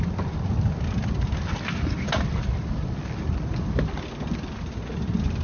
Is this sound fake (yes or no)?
no